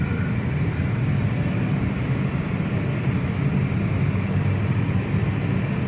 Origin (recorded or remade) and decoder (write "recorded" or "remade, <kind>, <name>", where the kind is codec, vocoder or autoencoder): recorded